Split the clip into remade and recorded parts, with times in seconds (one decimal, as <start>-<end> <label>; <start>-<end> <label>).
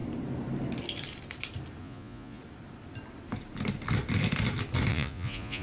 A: 0.0-1.8 recorded; 1.8-2.4 remade; 2.4-4.9 recorded; 4.9-5.6 remade